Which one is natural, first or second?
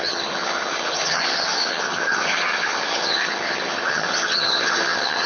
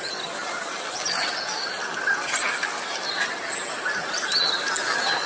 second